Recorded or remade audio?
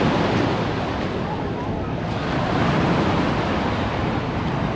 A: recorded